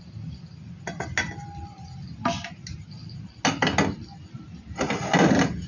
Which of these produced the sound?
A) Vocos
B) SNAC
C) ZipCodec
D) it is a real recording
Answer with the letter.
D